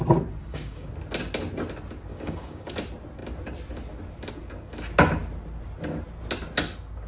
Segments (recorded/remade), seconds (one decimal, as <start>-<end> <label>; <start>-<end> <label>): 0.0-0.4 recorded; 0.4-0.9 remade; 0.9-2.1 recorded; 2.1-2.7 remade; 2.7-7.1 recorded